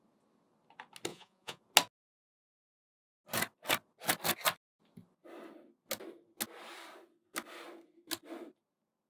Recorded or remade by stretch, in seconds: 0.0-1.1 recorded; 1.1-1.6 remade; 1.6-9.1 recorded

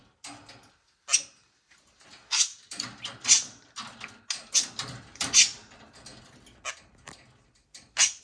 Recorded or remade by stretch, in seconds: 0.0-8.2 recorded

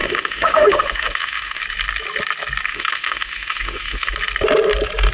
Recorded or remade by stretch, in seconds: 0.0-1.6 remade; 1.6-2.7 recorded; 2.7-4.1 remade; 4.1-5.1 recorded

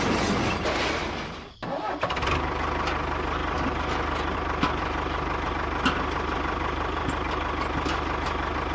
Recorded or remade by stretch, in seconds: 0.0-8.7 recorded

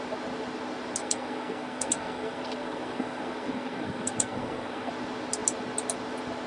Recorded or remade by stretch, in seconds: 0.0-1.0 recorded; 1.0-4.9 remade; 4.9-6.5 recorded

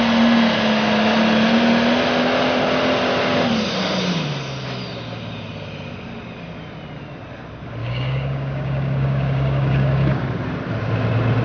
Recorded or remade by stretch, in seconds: 0.0-7.8 recorded; 7.8-10.2 remade; 10.2-11.4 recorded

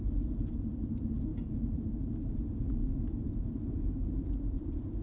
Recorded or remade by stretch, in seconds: 0.0-5.0 remade

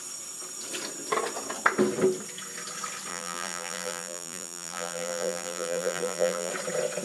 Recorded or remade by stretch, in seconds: 0.0-3.1 recorded; 3.1-6.5 remade; 6.5-7.0 recorded